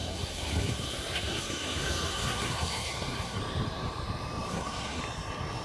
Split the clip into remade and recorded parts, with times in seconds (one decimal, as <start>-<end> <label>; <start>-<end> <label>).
0.0-3.4 remade; 3.4-4.5 recorded; 4.5-5.0 remade; 5.0-5.6 recorded